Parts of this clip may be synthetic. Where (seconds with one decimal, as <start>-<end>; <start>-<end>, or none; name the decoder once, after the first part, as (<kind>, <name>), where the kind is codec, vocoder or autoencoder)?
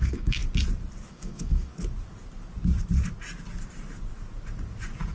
0.0-0.4 (autoencoder, DAC-VAE); 1.1-1.7